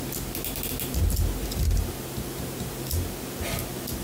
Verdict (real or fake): real